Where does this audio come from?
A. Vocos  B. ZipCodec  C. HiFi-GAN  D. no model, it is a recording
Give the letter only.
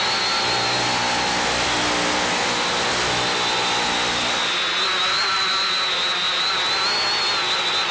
D